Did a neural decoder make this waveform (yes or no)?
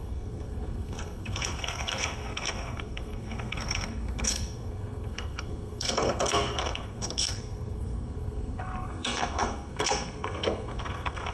yes